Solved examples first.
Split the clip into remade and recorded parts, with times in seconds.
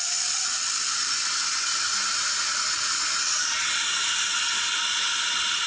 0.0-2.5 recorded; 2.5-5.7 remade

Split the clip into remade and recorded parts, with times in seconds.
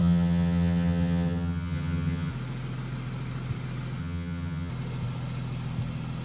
0.0-2.3 remade; 2.3-4.0 recorded; 4.0-4.7 remade; 4.7-6.2 recorded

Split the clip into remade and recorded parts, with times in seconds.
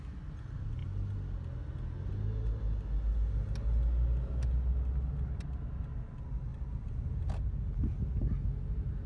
0.0-6.5 recorded; 6.5-7.3 remade; 7.3-9.1 recorded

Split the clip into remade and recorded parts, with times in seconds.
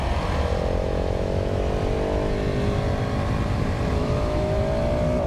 0.0-0.8 recorded; 0.8-1.6 remade; 1.6-4.0 recorded; 4.0-4.6 remade; 4.6-5.3 recorded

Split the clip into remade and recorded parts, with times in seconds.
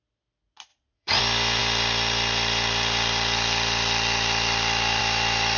0.0-0.7 recorded; 0.7-1.2 remade; 1.2-5.6 recorded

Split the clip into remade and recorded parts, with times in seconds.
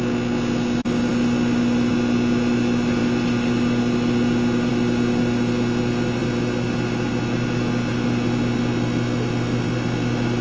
0.0-10.4 recorded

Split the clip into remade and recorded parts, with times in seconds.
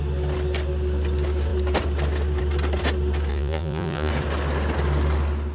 0.0-3.3 recorded; 3.3-4.1 remade; 4.1-5.5 recorded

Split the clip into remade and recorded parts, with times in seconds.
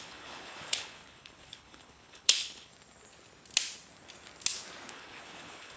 0.0-2.7 remade; 2.7-4.9 recorded; 4.9-5.8 remade